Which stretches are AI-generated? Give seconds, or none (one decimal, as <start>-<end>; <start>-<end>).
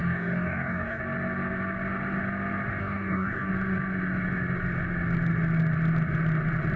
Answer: 0.0-1.0; 2.8-3.5